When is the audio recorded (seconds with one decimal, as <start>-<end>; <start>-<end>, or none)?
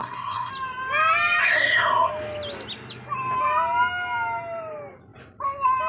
0.5-1.4; 2.1-5.9